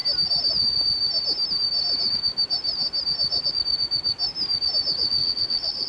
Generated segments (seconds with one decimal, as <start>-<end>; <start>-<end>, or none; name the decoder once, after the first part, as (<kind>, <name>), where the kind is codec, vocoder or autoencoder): 5.2-5.9 (vocoder, WaveNeXt)